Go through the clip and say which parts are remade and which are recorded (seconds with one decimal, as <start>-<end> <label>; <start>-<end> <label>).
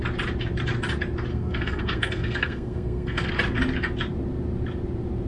0.0-1.3 recorded; 1.3-3.3 remade; 3.3-5.3 recorded